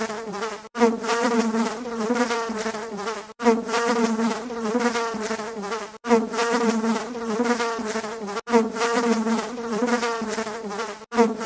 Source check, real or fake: fake